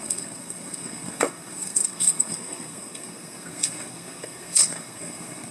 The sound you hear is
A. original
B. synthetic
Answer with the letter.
B